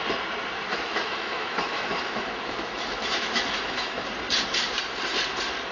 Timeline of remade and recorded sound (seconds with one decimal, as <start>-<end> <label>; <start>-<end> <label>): 0.0-0.7 recorded; 0.7-4.0 remade; 4.0-5.7 recorded

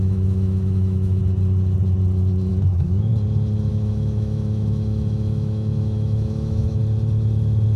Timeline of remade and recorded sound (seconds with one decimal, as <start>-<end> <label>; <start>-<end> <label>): 0.0-1.2 remade; 1.2-2.5 recorded; 2.5-3.1 remade; 3.1-3.7 recorded; 3.7-6.8 remade; 6.8-7.8 recorded

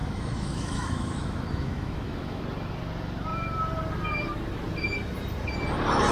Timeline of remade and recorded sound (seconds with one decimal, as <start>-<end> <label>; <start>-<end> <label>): 0.0-2.4 remade; 2.4-6.1 recorded

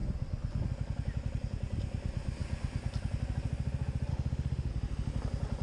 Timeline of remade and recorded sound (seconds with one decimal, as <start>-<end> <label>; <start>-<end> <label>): 0.0-4.1 recorded; 4.1-4.7 remade; 4.7-5.6 recorded

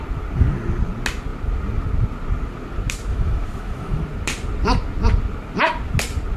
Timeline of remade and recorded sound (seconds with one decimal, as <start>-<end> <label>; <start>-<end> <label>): 0.0-3.1 recorded; 3.1-4.0 remade; 4.0-6.4 recorded

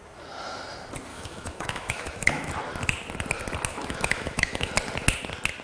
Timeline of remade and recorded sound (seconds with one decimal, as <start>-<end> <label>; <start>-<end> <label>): 0.0-1.1 recorded; 1.1-2.5 remade; 2.5-3.7 recorded; 3.7-4.7 remade; 4.7-5.6 recorded

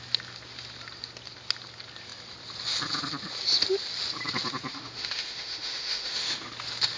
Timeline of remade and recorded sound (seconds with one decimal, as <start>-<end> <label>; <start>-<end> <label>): 0.0-4.7 recorded; 4.7-6.5 remade; 6.5-7.0 recorded

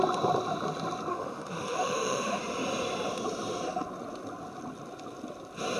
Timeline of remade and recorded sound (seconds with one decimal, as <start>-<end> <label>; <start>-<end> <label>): 0.0-1.1 recorded; 1.1-2.4 remade; 2.4-5.8 recorded